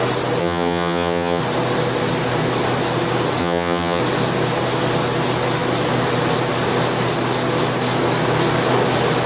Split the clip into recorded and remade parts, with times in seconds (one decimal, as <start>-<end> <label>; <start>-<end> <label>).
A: 0.0-0.4 recorded; 0.4-1.4 remade; 1.4-3.4 recorded; 3.4-4.0 remade; 4.0-9.3 recorded